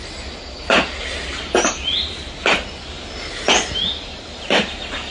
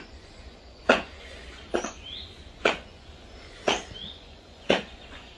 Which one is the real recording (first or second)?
first